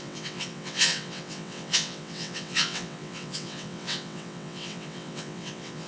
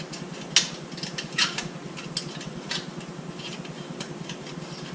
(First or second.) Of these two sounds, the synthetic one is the first